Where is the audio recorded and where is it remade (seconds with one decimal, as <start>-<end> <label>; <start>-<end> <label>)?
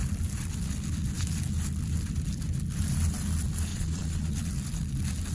0.0-3.7 recorded; 3.7-4.5 remade; 4.5-5.3 recorded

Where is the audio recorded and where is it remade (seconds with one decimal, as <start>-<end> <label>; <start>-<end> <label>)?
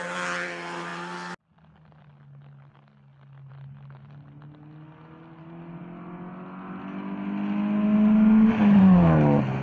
0.0-9.6 recorded